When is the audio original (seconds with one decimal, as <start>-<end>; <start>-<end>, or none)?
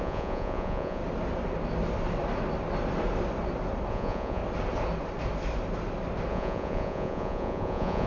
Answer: 1.0-3.9; 4.4-6.3